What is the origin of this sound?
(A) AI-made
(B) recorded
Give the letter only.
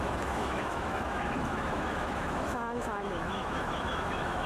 A